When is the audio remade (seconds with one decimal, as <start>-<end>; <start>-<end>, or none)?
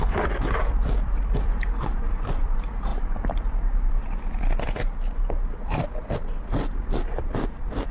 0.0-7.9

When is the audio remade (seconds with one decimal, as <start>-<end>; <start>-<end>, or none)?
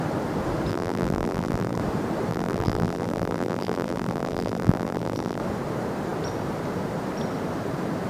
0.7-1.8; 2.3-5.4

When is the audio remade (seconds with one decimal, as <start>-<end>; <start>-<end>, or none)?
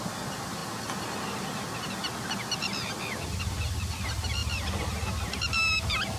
4.4-5.2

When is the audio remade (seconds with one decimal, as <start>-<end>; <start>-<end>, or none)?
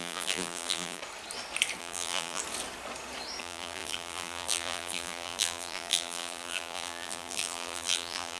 0.0-1.0; 1.8-2.4; 3.4-8.4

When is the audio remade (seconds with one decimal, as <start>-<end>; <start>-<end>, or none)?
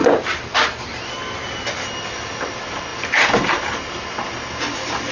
none